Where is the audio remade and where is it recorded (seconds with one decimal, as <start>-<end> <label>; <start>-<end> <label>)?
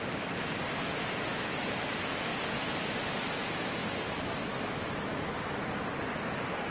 0.0-1.3 recorded; 1.3-1.8 remade; 1.8-3.8 recorded; 3.8-5.8 remade; 5.8-6.7 recorded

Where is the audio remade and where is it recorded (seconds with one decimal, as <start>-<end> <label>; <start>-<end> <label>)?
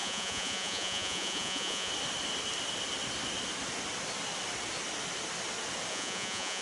0.0-1.9 remade; 1.9-5.9 recorded; 5.9-6.6 remade